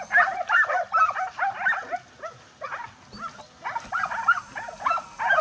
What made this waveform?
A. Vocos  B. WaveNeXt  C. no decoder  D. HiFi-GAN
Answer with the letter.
C